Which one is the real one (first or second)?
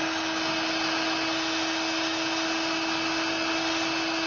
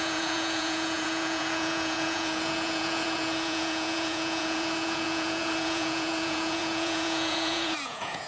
first